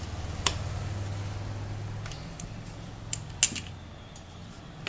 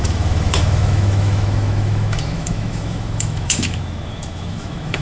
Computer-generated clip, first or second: second